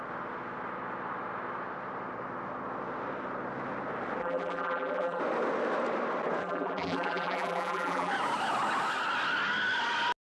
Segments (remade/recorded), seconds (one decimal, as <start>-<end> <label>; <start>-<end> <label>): 0.0-4.2 recorded; 4.2-5.2 remade; 5.2-6.4 recorded; 6.4-8.1 remade; 8.1-10.3 recorded